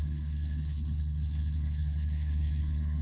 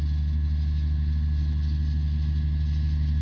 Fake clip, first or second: first